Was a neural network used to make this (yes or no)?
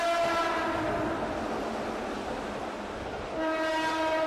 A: no